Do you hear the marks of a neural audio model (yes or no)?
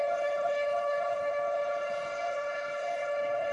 yes